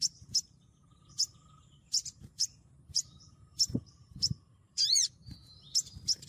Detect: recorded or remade remade